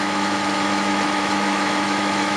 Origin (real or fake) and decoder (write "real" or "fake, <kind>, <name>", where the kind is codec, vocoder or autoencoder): fake, autoencoder, DAC-VAE